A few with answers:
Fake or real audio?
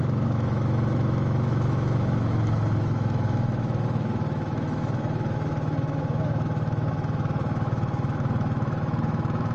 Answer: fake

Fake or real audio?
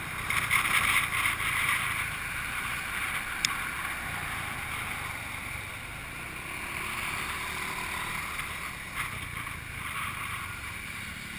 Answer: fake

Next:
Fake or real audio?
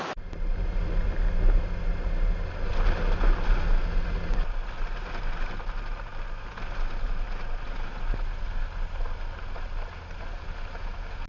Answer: real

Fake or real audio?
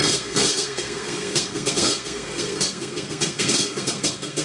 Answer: fake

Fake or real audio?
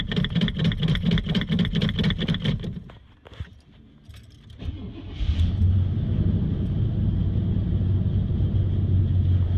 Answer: real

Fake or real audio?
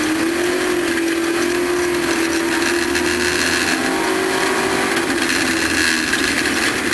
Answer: real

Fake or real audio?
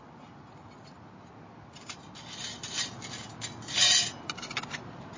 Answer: real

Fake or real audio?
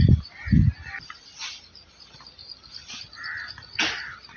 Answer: real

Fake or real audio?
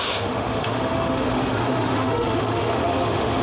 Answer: fake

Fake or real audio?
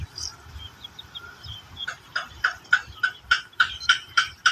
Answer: fake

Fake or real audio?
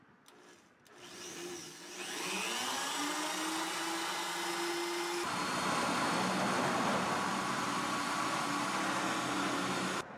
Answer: real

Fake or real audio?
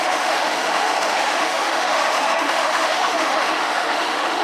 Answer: fake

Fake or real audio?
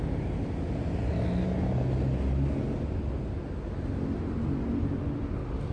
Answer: real